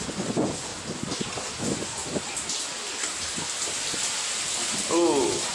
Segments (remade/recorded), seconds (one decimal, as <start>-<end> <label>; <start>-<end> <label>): 0.0-0.7 remade; 0.7-1.6 recorded; 1.6-2.0 remade; 2.0-5.5 recorded